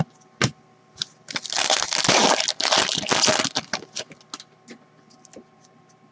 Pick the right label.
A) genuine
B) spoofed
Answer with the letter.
A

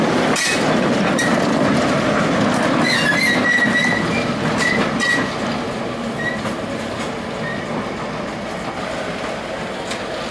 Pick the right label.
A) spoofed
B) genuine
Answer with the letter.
B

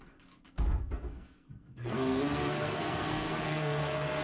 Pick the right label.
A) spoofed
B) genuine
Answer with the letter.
A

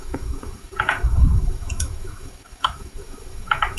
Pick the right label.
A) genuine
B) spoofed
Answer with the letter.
B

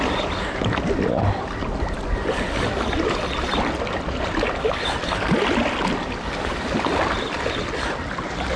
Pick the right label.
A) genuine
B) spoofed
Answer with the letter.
A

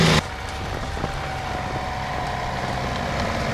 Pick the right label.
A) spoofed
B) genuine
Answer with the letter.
B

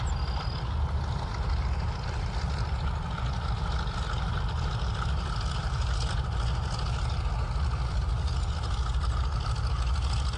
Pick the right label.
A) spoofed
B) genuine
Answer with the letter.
B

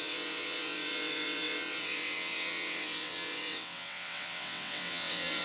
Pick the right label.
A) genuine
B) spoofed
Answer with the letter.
B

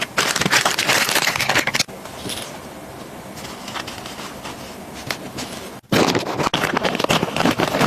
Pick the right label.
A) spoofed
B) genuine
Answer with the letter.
B